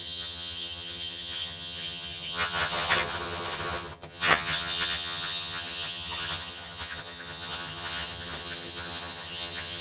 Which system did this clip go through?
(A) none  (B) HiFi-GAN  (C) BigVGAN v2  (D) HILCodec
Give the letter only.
B